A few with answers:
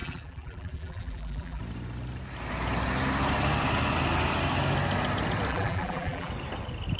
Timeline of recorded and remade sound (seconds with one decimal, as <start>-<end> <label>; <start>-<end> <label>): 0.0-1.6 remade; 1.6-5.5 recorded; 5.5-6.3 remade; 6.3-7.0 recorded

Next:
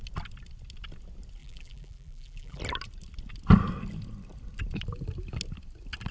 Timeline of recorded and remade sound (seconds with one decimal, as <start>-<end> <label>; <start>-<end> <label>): 0.0-1.4 recorded; 1.4-2.6 remade; 2.6-6.1 recorded

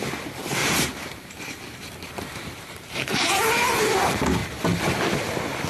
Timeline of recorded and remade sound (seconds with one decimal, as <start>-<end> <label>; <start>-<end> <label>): 0.0-0.6 recorded; 0.6-4.0 remade; 4.0-5.7 recorded